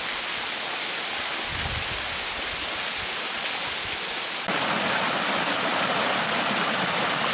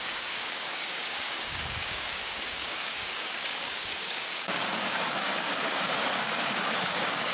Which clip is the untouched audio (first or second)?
first